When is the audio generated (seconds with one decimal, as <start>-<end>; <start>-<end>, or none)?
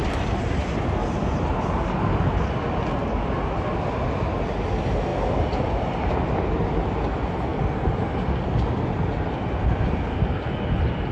none